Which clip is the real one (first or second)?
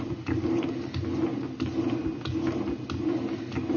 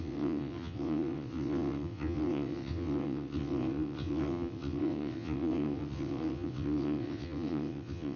first